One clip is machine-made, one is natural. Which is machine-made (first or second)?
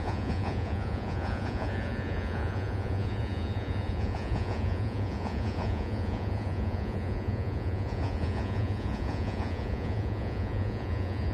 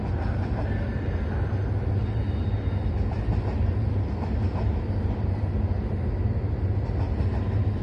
first